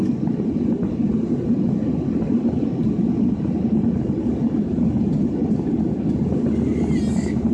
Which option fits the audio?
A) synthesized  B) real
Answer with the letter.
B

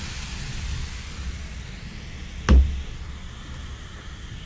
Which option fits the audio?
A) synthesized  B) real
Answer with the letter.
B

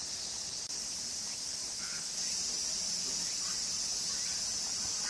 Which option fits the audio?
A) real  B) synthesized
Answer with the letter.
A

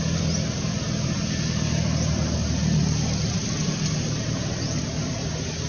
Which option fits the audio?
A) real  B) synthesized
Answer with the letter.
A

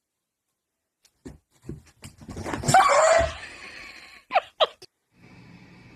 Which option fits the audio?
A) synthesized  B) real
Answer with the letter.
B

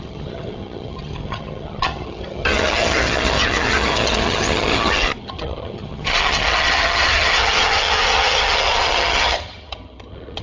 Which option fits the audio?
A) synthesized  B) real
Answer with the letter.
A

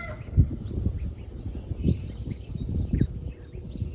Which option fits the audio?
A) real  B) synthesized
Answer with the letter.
A